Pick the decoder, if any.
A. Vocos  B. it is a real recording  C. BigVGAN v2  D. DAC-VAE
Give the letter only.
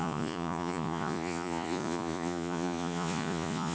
A